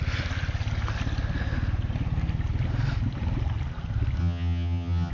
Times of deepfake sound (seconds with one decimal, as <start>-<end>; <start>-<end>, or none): 4.2-5.1